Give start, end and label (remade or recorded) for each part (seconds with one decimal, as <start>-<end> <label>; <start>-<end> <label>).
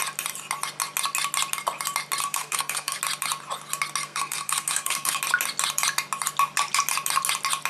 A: 0.0-2.2 recorded; 2.2-3.0 remade; 3.0-4.0 recorded; 4.0-5.2 remade; 5.2-7.7 recorded